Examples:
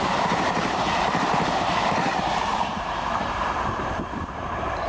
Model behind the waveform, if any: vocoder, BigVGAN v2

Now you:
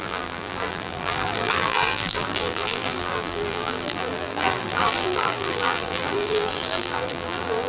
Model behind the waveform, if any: vocoder, BigVGAN v2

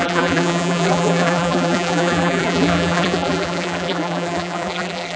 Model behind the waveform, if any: vocoder, BigVGAN v2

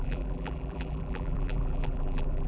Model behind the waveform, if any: vocoder, BigVGAN v2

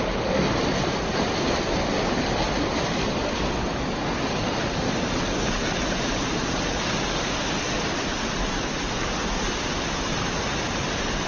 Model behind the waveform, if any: none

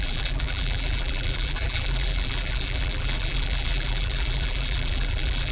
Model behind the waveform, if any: vocoder, BigVGAN v2